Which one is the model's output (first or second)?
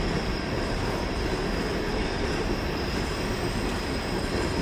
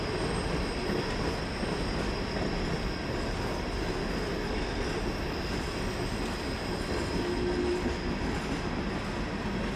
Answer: first